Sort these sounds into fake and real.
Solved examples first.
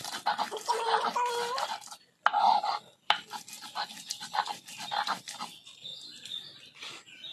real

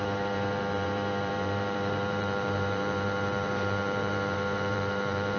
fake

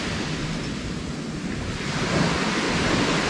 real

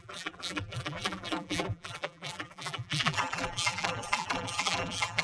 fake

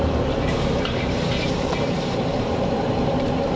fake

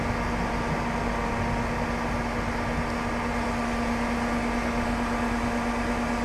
real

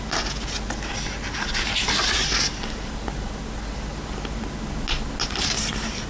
real